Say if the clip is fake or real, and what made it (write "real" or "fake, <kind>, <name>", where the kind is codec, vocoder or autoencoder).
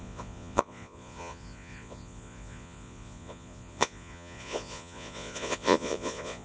fake, vocoder, Vocos